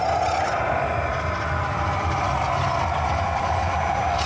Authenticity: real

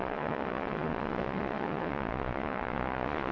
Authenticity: fake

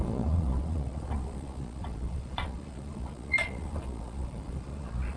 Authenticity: fake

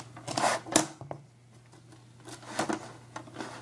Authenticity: real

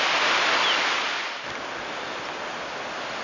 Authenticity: real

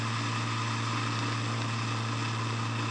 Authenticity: real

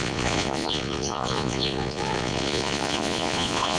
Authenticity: fake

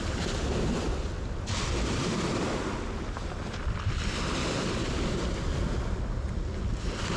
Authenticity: real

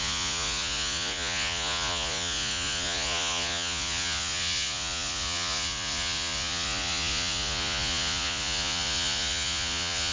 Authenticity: fake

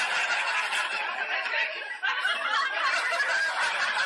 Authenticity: real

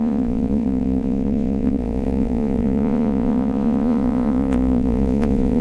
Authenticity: fake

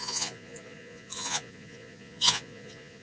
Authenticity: fake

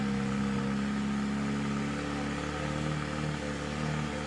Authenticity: real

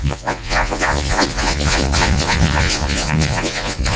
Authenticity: fake